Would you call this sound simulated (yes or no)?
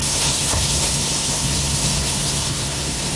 yes